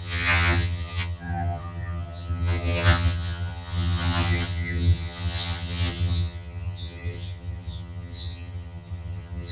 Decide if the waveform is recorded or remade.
remade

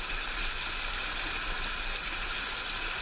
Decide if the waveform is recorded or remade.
recorded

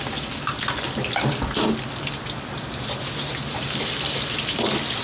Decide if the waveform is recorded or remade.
recorded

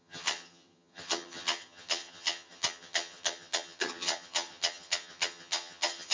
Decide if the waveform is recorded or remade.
remade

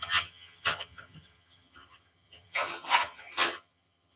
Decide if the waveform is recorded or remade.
remade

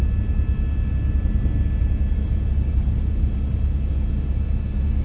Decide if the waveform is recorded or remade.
recorded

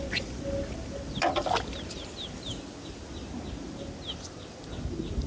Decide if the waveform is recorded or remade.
recorded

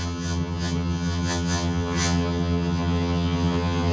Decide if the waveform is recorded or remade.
remade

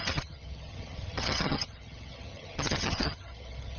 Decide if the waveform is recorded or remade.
remade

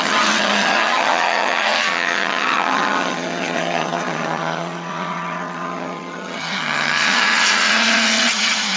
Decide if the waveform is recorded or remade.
remade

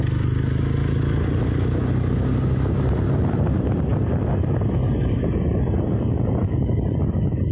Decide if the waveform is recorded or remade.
recorded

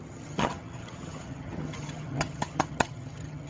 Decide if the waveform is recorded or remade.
remade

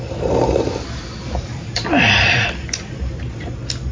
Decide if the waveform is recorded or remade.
recorded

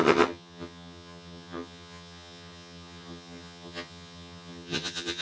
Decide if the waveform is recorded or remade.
remade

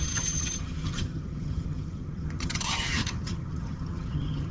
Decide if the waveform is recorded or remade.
remade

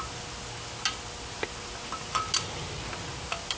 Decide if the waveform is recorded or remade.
recorded